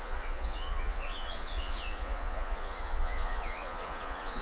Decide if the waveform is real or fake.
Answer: fake